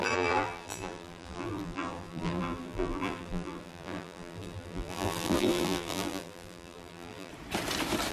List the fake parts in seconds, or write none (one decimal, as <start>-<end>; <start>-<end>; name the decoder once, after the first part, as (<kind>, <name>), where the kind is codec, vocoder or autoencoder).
0.0-7.3 (vocoder, BigVGAN v2)